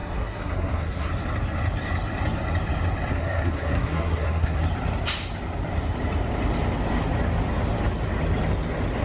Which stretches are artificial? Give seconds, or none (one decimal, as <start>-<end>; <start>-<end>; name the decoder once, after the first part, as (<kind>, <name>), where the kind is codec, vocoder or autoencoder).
0.0-1.1 (codec, SNAC); 3.1-4.6